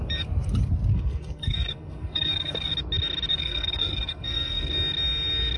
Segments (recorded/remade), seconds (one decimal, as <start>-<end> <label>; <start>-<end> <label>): 0.0-0.9 recorded; 0.9-2.7 remade; 2.7-3.3 recorded; 3.3-4.7 remade; 4.7-5.6 recorded